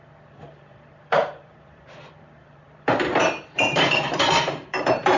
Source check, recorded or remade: remade